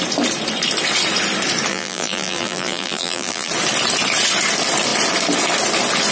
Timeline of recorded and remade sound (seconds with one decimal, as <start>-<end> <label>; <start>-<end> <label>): 0.0-1.7 recorded; 1.7-3.5 remade; 3.5-6.1 recorded